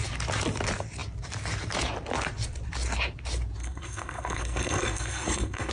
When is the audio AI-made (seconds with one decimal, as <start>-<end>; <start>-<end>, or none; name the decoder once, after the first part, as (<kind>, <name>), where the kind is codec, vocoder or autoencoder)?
3.6-5.7 (codec, SNAC)